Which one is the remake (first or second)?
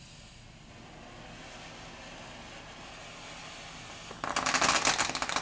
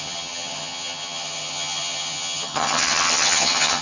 second